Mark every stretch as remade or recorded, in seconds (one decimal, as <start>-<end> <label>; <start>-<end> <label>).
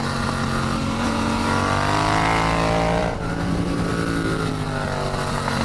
0.0-3.0 recorded; 3.0-3.9 remade; 3.9-5.6 recorded